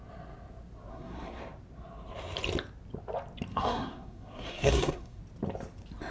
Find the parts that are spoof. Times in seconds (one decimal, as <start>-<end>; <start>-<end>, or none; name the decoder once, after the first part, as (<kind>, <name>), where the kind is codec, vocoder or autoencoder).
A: 0.9-1.4 (codec, SNAC); 3.5-5.2